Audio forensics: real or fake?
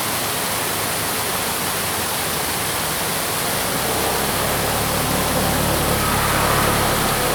real